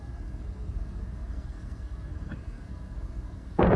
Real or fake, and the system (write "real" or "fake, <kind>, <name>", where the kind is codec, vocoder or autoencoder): fake, codec, SNAC